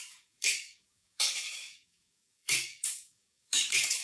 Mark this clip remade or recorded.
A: remade